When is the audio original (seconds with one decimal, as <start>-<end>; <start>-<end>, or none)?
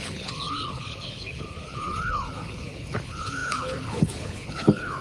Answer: none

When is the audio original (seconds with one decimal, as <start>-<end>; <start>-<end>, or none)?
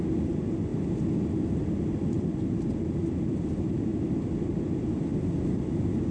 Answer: 0.0-6.1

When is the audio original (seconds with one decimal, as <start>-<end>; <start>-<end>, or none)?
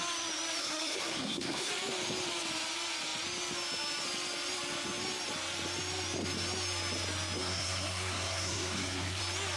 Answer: 0.0-0.6; 1.7-7.4; 9.2-9.6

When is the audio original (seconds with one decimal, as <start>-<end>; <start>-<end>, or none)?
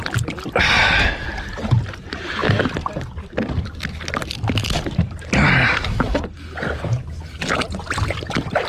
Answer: 0.0-8.7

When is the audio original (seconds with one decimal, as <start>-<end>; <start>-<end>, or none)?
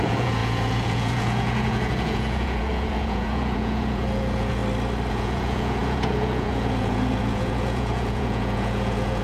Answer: 4.6-5.1